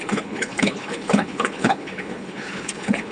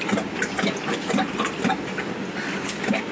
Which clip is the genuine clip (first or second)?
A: second